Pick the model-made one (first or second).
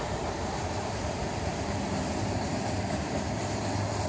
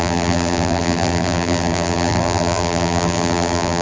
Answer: second